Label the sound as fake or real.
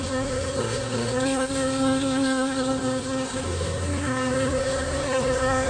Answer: fake